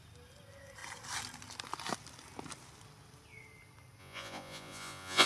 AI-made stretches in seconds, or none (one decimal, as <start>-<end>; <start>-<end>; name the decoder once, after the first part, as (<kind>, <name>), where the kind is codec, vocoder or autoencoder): 4.0-5.3 (vocoder, Vocos)